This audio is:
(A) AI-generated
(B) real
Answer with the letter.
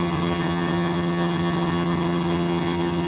A